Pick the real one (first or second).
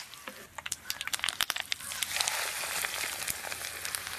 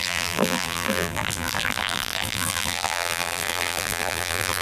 first